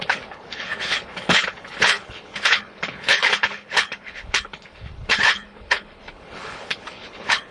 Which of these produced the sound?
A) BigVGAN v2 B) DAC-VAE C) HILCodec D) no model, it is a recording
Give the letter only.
C